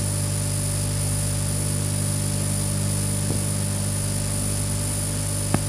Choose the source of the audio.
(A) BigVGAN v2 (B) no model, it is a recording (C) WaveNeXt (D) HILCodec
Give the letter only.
B